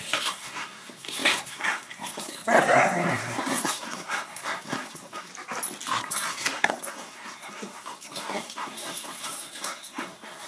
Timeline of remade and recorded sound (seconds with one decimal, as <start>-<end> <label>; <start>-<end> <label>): 0.0-5.3 remade; 5.3-6.0 recorded; 6.0-10.5 remade